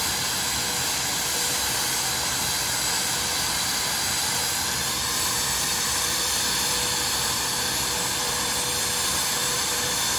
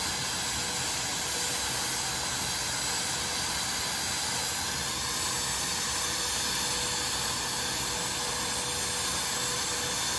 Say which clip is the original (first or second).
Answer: second